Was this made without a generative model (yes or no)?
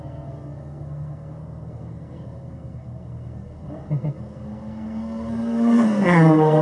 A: no